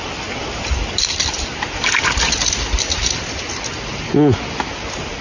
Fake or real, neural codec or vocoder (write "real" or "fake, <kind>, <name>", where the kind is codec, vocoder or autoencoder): real